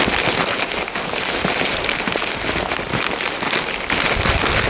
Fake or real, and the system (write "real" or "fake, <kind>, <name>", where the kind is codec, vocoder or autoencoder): real